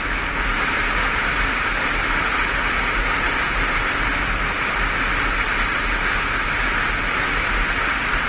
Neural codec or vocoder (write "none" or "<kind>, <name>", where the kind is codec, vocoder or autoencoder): none